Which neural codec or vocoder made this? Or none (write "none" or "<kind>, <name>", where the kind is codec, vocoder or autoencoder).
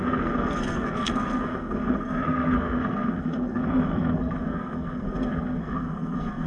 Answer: codec, SNAC